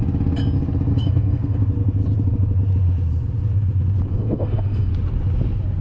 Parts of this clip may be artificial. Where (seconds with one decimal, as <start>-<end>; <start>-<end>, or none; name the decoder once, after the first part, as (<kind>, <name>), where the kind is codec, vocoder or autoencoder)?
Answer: 0.9-1.6 (codec, SNAC); 4.1-4.9